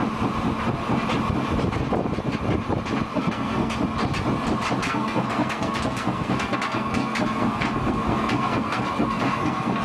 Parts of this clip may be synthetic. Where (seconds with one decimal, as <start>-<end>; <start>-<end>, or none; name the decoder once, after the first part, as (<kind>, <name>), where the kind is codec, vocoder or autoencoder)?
3.1-3.7 (codec, SNAC); 4.8-9.8